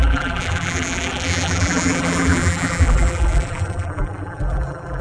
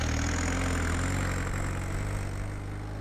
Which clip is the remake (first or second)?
first